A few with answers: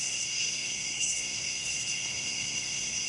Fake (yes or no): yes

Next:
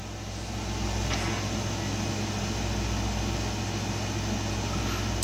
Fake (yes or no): no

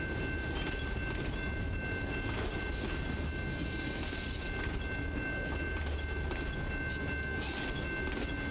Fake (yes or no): no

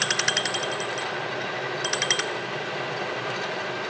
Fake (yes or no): no